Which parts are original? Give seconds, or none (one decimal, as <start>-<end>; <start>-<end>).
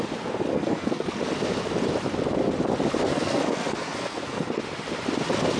0.0-0.5; 1.2-3.1; 4.6-5.6